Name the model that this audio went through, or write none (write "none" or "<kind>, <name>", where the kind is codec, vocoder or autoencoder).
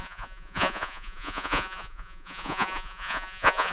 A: vocoder, Vocos